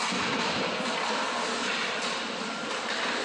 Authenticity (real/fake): real